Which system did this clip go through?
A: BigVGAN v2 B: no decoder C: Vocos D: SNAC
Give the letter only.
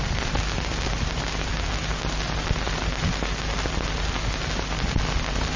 B